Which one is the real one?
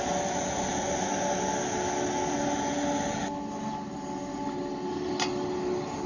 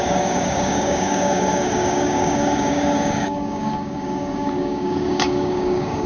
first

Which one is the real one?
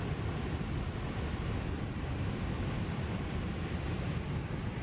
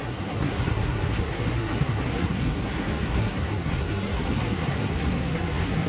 first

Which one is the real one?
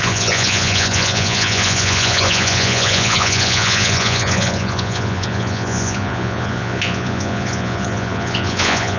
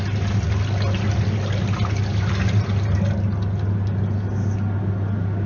second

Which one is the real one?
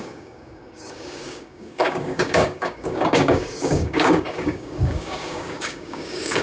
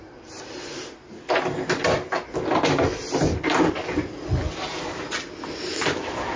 second